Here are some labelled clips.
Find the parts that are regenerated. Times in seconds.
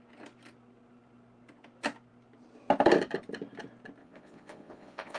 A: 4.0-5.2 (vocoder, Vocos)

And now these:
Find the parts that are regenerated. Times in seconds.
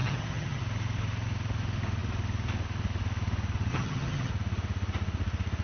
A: 0.0-0.6 (vocoder, HiFi-GAN); 3.7-4.3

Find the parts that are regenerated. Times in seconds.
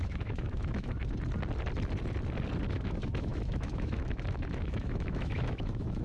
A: 0.0-1.0 (autoencoder, DAC-VAE); 2.7-6.0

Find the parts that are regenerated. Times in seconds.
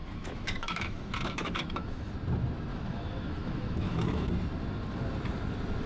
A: 0.0-2.1 (autoencoder, DAC-VAE); 2.7-4.3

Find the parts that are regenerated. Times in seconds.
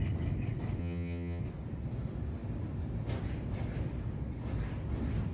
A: 0.8-1.4 (vocoder, HiFi-GAN)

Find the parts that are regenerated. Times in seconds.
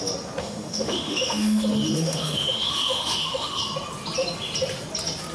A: 0.4-3.6 (autoencoder, DAC-VAE)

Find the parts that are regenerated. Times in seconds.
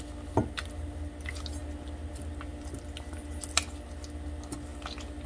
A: none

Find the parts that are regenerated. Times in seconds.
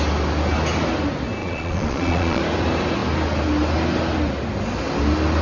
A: 1.4-2.4 (vocoder, Vocos)